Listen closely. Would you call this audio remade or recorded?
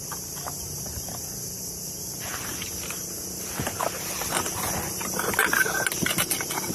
recorded